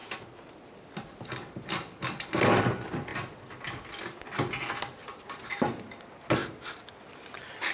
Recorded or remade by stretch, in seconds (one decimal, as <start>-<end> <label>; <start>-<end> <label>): 0.0-7.7 recorded